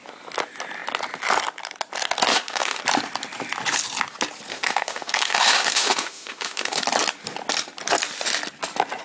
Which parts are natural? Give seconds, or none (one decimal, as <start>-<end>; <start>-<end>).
0.0-2.3; 2.8-4.5; 6.8-9.0